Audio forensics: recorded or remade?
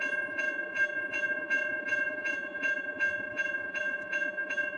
remade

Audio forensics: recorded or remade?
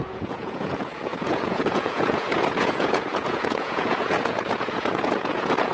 remade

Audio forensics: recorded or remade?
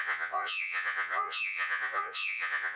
remade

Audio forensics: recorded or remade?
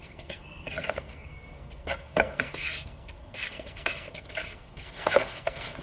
remade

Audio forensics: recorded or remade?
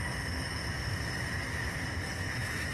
recorded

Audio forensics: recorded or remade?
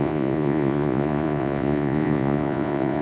remade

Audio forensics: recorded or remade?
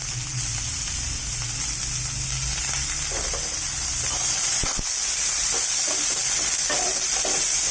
recorded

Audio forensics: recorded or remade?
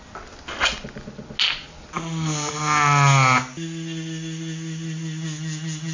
recorded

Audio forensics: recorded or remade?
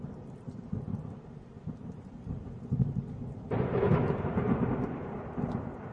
recorded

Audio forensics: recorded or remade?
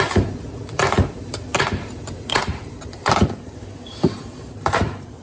remade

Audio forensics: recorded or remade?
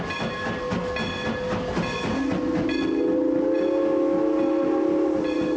recorded